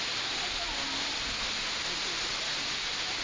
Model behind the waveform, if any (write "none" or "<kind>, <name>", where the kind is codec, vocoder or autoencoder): none